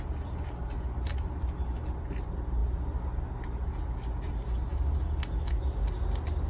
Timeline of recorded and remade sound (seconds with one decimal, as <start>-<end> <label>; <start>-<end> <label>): 0.0-6.5 recorded